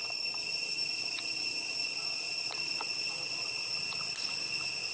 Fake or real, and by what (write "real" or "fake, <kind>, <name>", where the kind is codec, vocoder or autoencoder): real